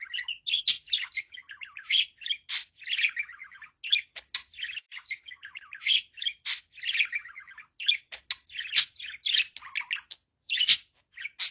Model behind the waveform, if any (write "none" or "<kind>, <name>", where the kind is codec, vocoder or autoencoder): none